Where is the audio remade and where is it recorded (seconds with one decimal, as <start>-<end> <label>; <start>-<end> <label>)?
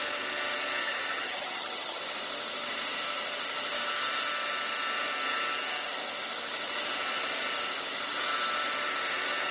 0.0-0.8 recorded; 0.8-2.0 remade; 2.0-9.5 recorded